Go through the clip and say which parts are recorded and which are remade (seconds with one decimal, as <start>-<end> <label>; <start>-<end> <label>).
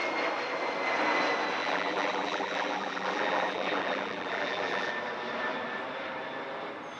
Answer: 0.0-1.6 recorded; 1.6-4.9 remade; 4.9-7.0 recorded